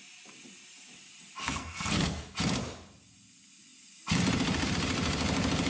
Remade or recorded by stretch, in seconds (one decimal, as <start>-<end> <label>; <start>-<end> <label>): 0.0-1.4 recorded; 1.4-2.2 remade; 2.2-5.7 recorded